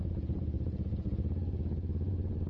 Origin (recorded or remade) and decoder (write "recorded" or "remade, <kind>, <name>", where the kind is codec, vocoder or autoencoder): remade, vocoder, Vocos